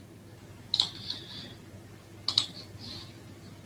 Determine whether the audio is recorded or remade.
recorded